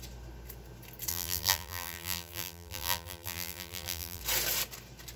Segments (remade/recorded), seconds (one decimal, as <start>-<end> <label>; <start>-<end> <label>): 0.0-1.1 recorded; 1.1-4.2 remade; 4.2-5.2 recorded